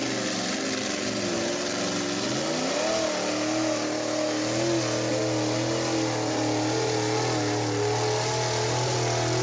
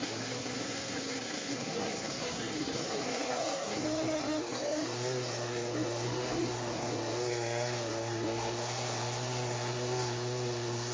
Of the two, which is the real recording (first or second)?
first